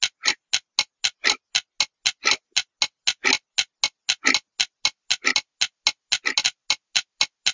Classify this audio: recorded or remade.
recorded